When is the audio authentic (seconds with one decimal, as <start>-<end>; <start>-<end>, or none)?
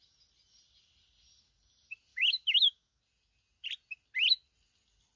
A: 0.0-2.1; 3.0-5.2